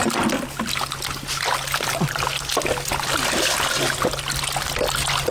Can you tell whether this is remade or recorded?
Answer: recorded